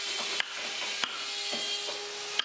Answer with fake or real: real